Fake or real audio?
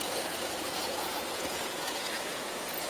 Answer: fake